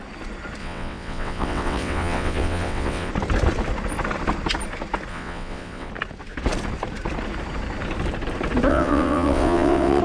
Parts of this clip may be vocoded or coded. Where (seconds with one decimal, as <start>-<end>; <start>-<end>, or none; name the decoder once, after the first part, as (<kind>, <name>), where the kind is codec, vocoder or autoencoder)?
0.6-3.1 (vocoder, WaveNeXt); 5.1-5.9; 8.7-10.0